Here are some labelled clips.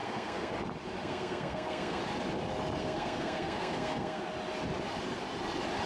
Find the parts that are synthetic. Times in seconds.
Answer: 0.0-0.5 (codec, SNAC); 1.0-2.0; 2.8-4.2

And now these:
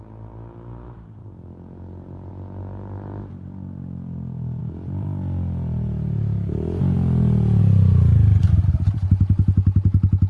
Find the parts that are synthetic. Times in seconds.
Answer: none

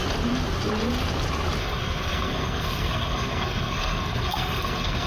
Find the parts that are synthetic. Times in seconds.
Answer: 1.6-5.1 (codec, SNAC)

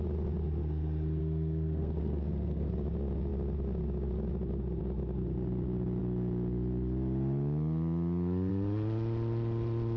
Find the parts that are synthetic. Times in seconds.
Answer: 1.2-2.7 (codec, SNAC)

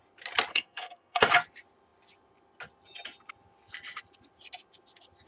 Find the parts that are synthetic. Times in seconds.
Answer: 0.5-1.3 (codec, SNAC)

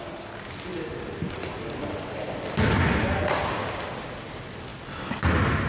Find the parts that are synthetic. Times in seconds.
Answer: none